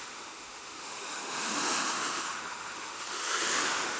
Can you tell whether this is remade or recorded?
remade